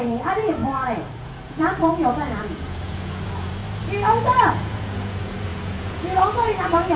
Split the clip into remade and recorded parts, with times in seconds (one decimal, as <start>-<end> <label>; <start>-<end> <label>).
0.0-3.6 remade; 3.6-4.5 recorded; 4.5-7.0 remade